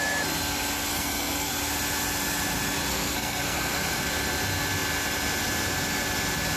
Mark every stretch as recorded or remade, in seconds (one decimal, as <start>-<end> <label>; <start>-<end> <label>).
0.0-0.9 recorded; 0.9-1.5 remade; 1.5-2.9 recorded; 2.9-4.0 remade; 4.0-6.6 recorded